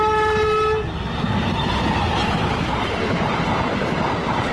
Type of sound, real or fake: fake